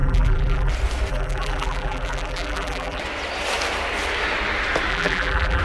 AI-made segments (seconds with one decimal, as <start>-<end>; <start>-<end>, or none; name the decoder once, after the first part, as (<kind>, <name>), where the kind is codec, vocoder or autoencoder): 0.0-0.7 (vocoder, BigVGAN v2); 1.1-3.0; 4.9-5.6